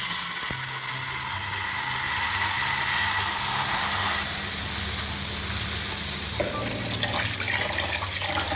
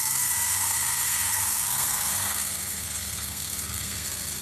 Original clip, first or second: first